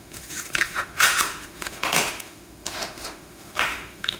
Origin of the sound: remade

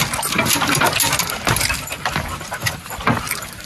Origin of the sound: recorded